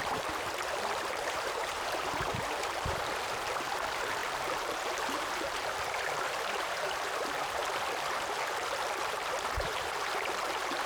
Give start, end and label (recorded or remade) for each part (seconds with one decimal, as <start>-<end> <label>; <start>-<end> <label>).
0.0-7.6 remade; 7.6-9.0 recorded; 9.0-10.9 remade